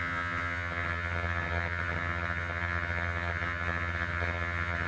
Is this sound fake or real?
fake